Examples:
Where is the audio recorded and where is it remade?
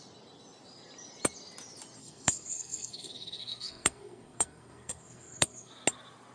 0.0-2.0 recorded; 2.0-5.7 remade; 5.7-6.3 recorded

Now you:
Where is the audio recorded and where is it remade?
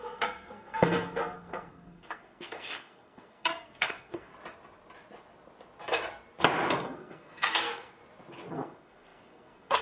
0.0-4.3 remade; 4.3-6.8 recorded; 6.8-8.0 remade; 8.0-8.5 recorded; 8.5-9.8 remade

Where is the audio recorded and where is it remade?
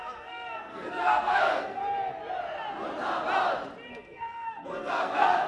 0.0-1.8 remade; 1.8-3.9 recorded; 3.9-5.5 remade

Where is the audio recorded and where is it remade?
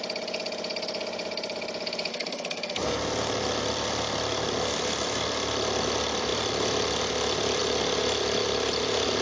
0.0-2.1 recorded; 2.1-3.0 remade; 3.0-9.2 recorded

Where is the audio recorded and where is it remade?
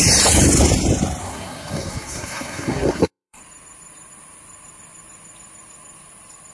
0.0-1.2 recorded; 1.2-3.4 remade; 3.4-6.5 recorded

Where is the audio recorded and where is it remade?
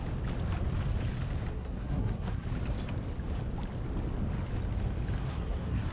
0.0-1.5 recorded; 1.5-2.4 remade; 2.4-5.2 recorded; 5.2-5.9 remade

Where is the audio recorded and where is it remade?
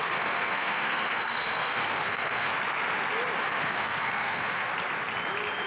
0.0-2.5 remade; 2.5-3.4 recorded; 3.4-4.7 remade; 4.7-5.7 recorded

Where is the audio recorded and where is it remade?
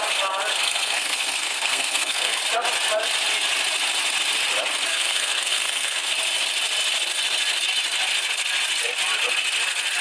0.0-0.5 recorded; 0.5-2.4 remade; 2.4-4.9 recorded; 4.9-6.1 remade; 6.1-10.0 recorded